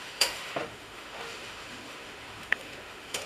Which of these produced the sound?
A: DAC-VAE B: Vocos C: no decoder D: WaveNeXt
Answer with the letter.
A